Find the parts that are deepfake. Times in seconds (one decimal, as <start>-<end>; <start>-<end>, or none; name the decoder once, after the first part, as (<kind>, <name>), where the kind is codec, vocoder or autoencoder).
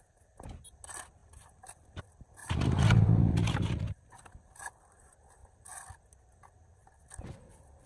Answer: none